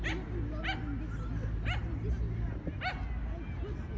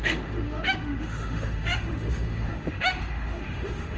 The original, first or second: first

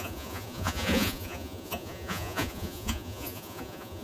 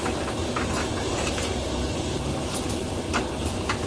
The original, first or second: second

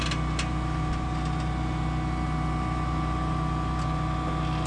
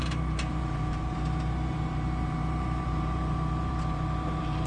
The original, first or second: first